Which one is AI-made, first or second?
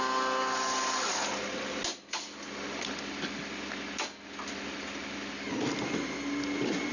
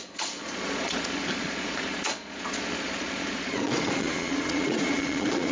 second